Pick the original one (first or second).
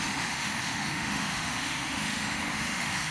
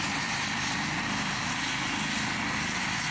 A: second